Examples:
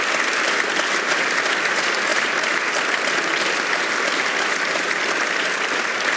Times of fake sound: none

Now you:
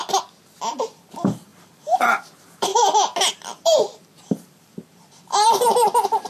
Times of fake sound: 0.7-2.7 (vocoder, BigVGAN v2); 3.3-6.3

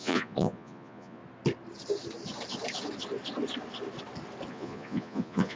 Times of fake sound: 0.0-1.2 (vocoder, Vocos); 4.5-5.6